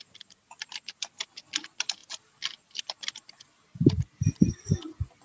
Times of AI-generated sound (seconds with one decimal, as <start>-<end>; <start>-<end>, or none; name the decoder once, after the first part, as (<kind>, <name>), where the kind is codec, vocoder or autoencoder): none